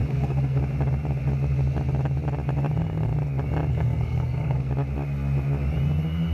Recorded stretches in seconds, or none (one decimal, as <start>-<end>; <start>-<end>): 0.6-3.7; 4.7-6.3